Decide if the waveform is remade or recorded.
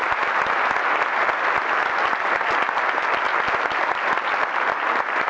recorded